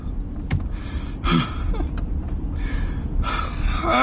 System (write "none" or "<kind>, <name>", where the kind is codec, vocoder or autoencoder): none